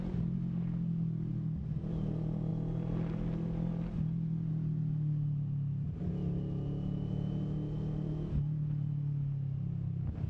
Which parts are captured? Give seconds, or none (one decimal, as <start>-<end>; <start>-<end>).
0.0-10.3